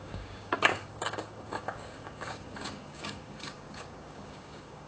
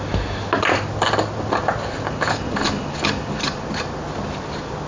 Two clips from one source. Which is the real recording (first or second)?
second